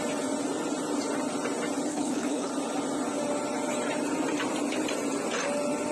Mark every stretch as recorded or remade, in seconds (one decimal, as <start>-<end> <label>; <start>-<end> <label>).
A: 0.0-1.9 recorded; 1.9-2.5 remade; 2.5-5.9 recorded